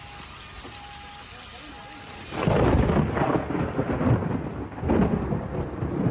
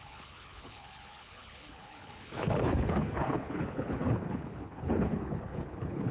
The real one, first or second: first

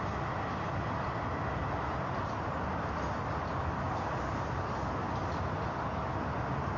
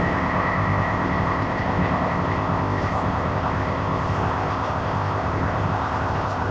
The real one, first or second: first